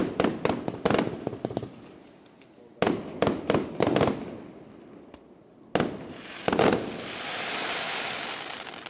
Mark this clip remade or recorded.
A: recorded